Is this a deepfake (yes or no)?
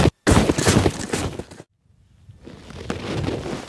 no